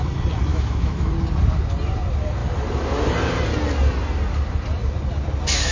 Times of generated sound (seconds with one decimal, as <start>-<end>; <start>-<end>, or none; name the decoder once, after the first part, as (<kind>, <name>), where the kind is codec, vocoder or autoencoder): 0.5-1.1 (autoencoder, DAC-VAE)